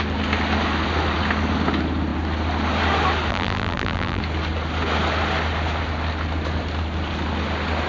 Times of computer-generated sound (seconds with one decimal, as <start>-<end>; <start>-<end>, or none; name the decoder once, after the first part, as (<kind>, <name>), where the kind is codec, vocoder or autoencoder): 3.3-4.2 (vocoder, BigVGAN v2)